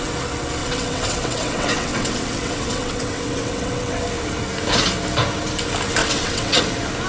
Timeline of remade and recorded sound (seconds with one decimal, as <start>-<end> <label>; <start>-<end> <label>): 0.0-0.6 recorded; 0.6-4.0 remade; 4.0-6.0 recorded; 6.0-6.6 remade; 6.6-7.1 recorded